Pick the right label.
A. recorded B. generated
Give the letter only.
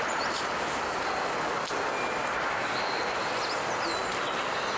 A